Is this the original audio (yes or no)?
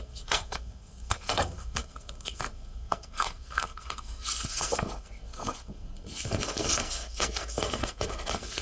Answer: no